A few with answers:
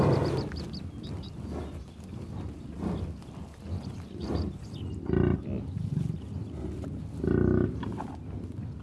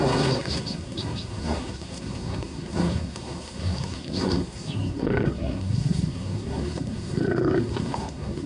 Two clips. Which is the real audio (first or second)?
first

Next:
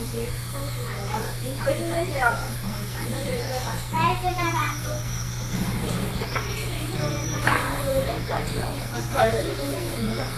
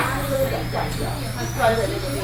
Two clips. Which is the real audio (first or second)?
second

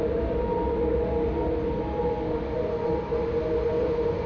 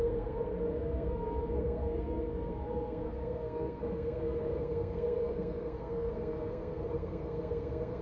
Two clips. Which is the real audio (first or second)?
first